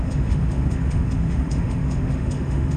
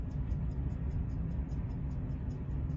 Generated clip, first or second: first